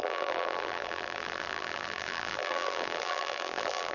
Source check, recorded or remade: remade